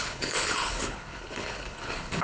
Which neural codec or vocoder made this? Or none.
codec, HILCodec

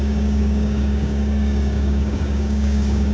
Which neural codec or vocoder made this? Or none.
codec, DAC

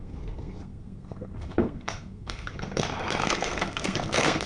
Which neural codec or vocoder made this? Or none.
codec, SNAC